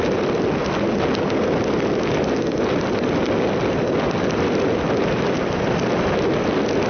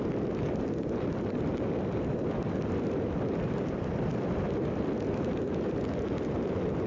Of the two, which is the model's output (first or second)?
second